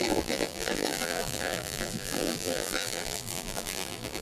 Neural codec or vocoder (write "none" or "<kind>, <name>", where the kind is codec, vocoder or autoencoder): vocoder, BigVGAN v2